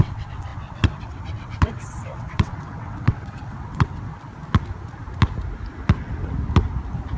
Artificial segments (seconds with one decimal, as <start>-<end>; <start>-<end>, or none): 0.0-4.1